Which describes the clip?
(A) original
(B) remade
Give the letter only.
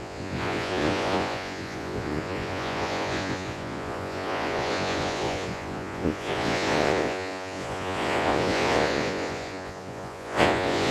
B